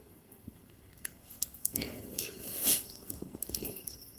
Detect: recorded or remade remade